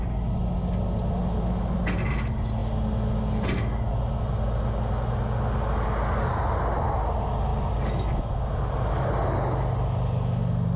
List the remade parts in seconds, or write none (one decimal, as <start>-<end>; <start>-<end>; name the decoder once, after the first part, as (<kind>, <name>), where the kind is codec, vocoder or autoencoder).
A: none